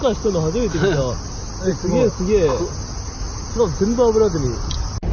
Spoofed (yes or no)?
no